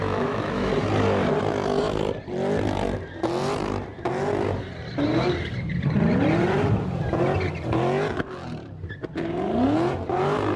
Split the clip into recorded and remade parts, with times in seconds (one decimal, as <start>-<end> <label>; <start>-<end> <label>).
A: 0.0-0.7 remade; 0.7-10.6 recorded